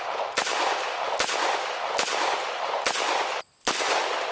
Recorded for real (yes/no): yes